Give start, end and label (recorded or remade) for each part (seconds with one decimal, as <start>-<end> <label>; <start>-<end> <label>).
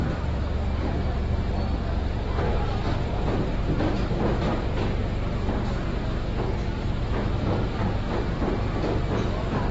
0.0-1.2 remade; 1.2-4.4 recorded; 4.4-5.0 remade; 5.0-6.5 recorded; 6.5-9.7 remade